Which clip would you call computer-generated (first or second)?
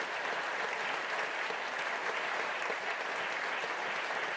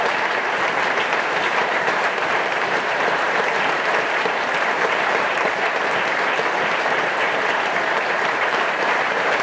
second